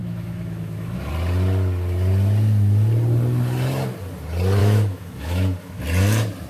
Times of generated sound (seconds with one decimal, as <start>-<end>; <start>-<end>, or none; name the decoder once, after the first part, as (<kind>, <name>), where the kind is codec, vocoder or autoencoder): 0.0-1.1 (autoencoder, DAC-VAE); 4.6-5.8